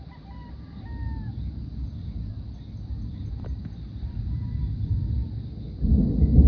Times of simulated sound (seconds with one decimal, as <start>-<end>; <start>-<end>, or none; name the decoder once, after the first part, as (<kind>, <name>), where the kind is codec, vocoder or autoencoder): 3.1-4.6 (vocoder, BigVGAN v2)